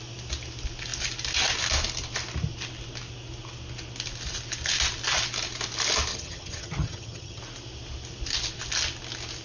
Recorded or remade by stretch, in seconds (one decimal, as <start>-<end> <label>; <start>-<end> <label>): 0.0-6.1 recorded; 6.1-7.4 remade; 7.4-9.4 recorded